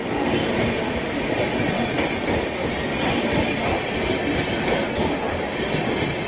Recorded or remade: recorded